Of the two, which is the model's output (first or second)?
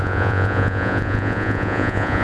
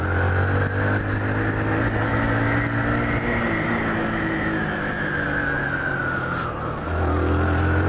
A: first